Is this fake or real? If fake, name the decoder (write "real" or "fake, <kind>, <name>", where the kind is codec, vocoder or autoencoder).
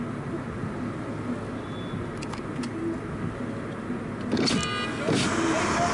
real